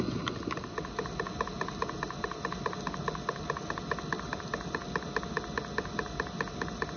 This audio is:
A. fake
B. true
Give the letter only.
B